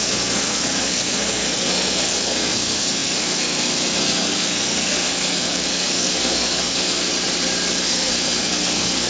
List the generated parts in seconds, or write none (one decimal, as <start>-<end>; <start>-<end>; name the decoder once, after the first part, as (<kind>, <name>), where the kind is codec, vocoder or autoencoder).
0.0-7.1 (codec, SNAC); 7.8-9.1